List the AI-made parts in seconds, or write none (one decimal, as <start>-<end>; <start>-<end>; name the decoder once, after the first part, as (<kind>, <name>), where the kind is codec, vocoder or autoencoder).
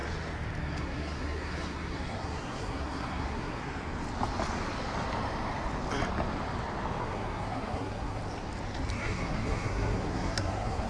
0.6-3.6 (codec, SNAC); 7.0-8.2; 9.0-10.9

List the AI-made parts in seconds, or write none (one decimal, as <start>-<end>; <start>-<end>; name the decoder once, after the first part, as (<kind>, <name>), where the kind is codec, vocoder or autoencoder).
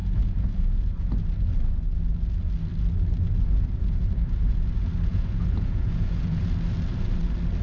0.0-0.9 (vocoder, Vocos); 5.1-6.4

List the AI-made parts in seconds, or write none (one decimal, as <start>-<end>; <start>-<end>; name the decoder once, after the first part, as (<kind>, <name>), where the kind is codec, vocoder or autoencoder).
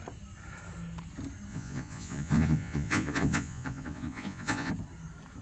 1.5-4.7 (vocoder, Vocos)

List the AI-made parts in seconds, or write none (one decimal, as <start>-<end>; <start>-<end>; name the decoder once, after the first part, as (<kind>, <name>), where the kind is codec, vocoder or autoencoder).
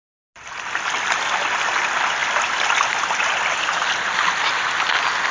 none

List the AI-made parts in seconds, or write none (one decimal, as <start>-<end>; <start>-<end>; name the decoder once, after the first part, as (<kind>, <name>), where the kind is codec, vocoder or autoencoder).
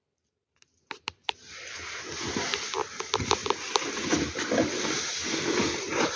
none